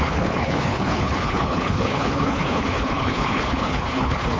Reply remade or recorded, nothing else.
remade